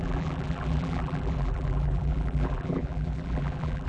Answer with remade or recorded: remade